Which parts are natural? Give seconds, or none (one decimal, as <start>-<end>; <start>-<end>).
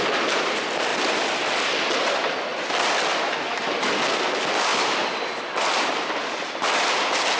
0.0-7.4